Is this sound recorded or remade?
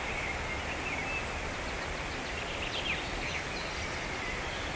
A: recorded